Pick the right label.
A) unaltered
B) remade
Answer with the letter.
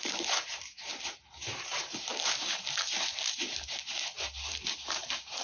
B